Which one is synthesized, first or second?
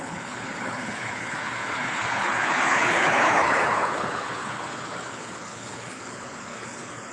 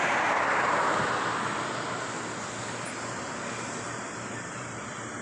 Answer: first